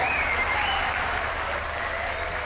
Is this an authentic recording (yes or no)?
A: yes